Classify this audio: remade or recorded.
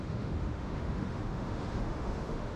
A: remade